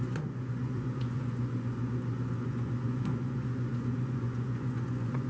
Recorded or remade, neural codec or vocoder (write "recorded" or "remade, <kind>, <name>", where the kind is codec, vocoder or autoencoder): remade, vocoder, Vocos